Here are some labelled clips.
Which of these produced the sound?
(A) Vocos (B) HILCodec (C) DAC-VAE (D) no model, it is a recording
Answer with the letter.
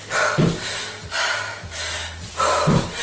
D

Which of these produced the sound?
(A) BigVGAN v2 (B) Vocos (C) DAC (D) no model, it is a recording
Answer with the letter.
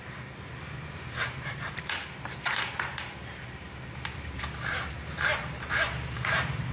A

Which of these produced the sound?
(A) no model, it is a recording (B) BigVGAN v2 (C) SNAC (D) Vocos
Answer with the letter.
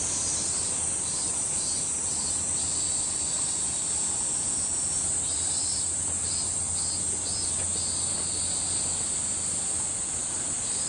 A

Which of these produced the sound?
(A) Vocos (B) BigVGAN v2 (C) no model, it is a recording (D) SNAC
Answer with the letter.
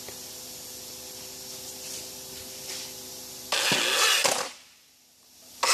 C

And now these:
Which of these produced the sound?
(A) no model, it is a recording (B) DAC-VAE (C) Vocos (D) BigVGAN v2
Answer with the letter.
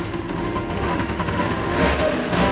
B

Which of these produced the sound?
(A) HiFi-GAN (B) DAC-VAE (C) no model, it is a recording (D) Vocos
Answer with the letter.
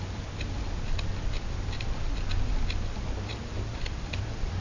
C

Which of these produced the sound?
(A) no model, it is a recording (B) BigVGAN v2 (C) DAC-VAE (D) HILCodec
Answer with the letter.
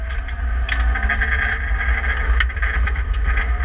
A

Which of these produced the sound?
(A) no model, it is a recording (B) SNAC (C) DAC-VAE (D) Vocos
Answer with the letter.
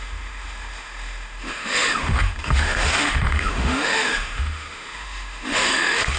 C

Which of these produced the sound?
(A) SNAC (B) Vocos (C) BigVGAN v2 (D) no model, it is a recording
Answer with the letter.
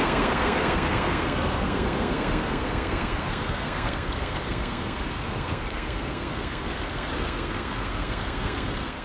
A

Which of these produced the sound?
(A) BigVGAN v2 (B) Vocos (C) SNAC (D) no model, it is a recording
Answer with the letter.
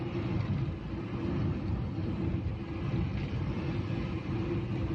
D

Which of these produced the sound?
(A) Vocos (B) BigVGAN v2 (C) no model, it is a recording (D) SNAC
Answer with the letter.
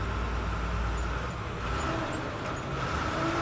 C